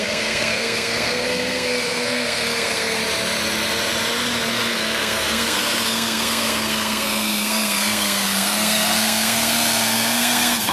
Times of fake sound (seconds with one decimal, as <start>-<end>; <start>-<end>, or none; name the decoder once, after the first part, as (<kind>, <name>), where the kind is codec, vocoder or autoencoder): 0.0-3.0 (codec, SNAC); 4.5-10.7